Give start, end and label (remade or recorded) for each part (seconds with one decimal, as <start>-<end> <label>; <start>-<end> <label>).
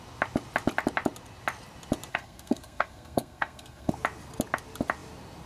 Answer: 0.0-2.1 recorded; 2.1-3.9 remade; 3.9-5.5 recorded